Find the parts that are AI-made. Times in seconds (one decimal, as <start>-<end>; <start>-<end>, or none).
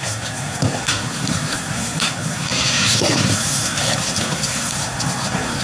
0.0-5.6